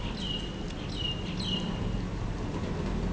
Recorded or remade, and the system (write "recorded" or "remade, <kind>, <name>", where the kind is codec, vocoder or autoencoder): recorded